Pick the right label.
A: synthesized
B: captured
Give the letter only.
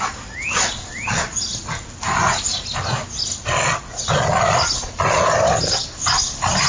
B